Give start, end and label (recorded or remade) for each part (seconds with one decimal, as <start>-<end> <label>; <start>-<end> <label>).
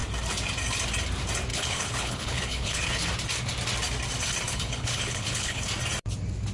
0.0-1.5 recorded; 1.5-2.9 remade; 2.9-4.5 recorded; 4.5-5.6 remade; 5.6-6.5 recorded